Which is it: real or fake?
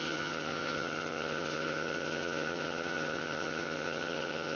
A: fake